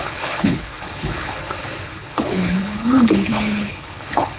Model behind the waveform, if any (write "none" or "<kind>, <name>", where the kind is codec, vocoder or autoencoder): codec, HILCodec